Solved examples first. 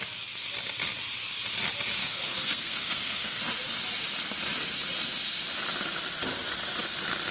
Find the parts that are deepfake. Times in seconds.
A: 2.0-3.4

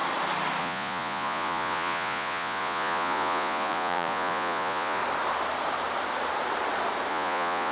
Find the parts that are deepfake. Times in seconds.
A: 0.6-5.0; 7.1-7.7

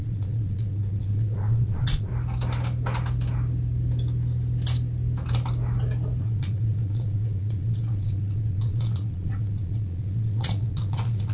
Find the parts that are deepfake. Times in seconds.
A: 0.0-2.1; 6.2-11.3

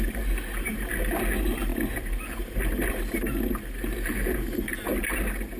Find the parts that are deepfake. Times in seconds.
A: none

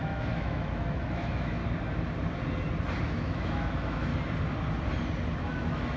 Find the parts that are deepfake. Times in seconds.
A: 0.0-1.6; 3.0-4.1; 5.4-6.0

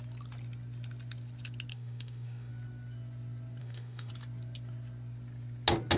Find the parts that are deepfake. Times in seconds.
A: 1.7-2.5; 3.6-4.1

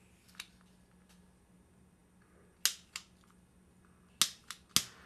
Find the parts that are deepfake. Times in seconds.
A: none

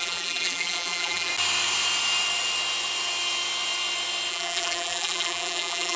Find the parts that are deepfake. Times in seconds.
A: 0.0-1.3; 4.3-6.0